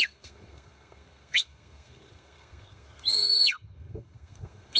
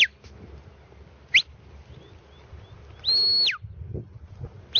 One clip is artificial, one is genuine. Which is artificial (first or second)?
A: first